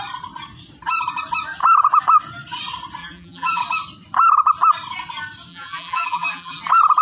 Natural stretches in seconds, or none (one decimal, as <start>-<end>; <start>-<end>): 0.0-3.0; 3.6-5.5; 6.6-7.0